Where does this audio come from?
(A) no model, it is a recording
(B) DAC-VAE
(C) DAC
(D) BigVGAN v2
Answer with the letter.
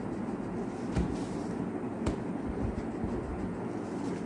A